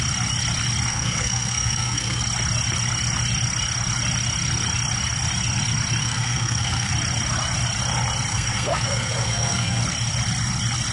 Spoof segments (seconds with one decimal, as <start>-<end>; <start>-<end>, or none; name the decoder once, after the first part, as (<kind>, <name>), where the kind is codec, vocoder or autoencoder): 0.9-2.2 (codec, SNAC); 6.0-6.9; 8.3-9.8